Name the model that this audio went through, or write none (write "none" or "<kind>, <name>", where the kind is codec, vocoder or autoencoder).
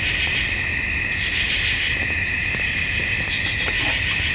none